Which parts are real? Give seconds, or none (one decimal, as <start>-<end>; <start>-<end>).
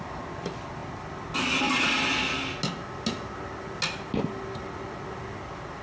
0.0-5.8